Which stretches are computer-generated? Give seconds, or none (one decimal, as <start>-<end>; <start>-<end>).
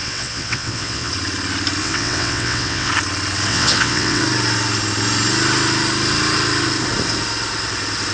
0.0-1.1; 1.8-2.9; 3.5-4.2